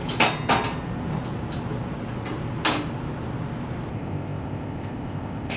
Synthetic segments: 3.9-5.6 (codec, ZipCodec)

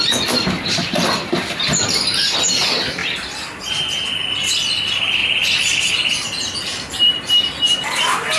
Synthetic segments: 0.4-1.8 (vocoder, BigVGAN v2); 3.0-3.7; 5.2-5.9; 6.7-7.3

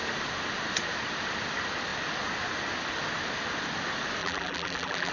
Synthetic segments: 4.2-5.1 (vocoder, BigVGAN v2)

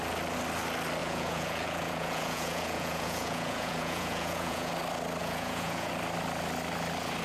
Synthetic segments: 1.0-4.7 (vocoder, Vocos); 5.2-5.9

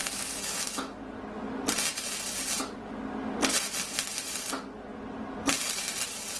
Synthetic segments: 0.0-1.0 (autoencoder, DAC-VAE)